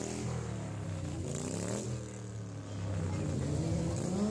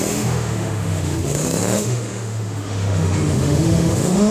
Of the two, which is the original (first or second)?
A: first